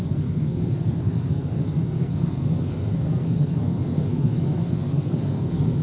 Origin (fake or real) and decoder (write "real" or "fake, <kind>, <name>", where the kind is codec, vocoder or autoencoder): fake, codec, SNAC